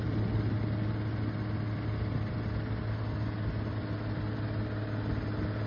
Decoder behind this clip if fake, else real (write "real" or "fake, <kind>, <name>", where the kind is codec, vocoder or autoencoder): real